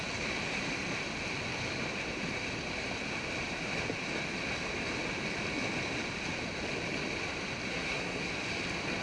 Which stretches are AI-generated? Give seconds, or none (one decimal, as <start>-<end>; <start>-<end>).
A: 7.7-8.3